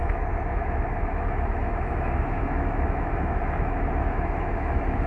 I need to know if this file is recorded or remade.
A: remade